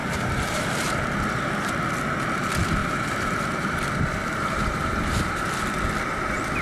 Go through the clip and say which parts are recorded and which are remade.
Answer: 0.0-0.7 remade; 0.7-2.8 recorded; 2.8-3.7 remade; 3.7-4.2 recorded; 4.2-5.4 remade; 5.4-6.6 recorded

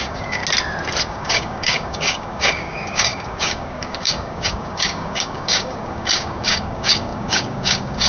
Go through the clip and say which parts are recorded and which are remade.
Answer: 0.0-0.4 remade; 0.4-1.0 recorded; 1.0-8.1 remade

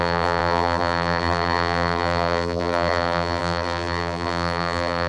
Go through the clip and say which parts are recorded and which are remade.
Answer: 0.0-5.1 remade

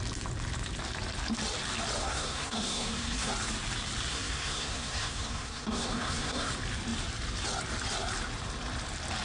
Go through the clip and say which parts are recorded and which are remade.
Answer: 0.0-2.0 recorded; 2.0-3.3 remade; 3.3-4.1 recorded; 4.1-6.5 remade; 6.5-9.2 recorded

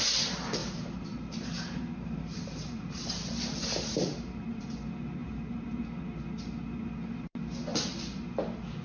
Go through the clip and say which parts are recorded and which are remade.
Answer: 0.0-0.6 recorded; 0.6-4.6 remade; 4.6-5.2 recorded; 5.2-5.8 remade; 5.8-8.8 recorded